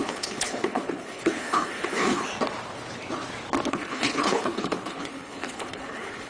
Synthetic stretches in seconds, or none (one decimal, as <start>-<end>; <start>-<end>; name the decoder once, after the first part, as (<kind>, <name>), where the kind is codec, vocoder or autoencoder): 0.0-2.3 (codec, HILCodec); 3.7-6.3